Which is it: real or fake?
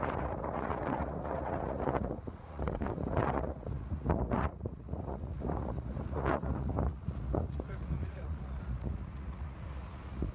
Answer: fake